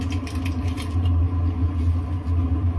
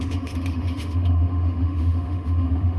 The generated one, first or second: second